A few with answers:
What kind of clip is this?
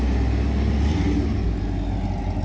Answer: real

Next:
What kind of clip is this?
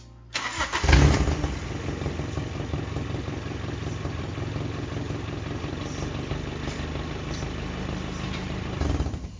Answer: real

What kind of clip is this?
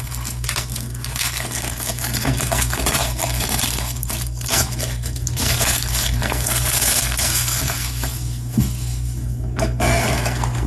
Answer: fake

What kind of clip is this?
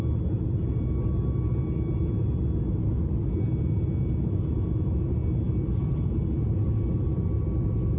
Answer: real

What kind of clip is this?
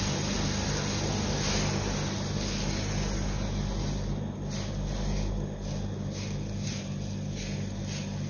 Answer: real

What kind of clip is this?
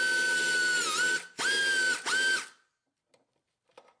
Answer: real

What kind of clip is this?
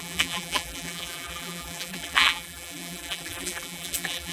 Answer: fake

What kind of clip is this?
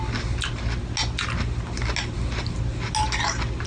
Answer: real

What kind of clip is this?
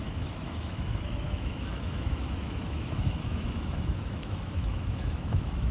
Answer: fake